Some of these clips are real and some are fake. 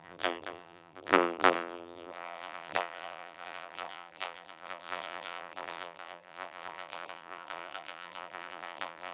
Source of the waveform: fake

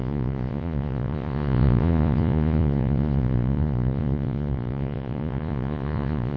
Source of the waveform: fake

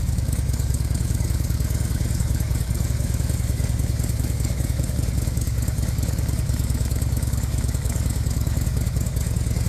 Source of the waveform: fake